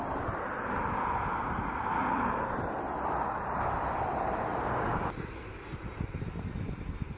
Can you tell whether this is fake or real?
real